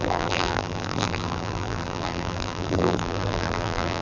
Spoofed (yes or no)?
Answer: yes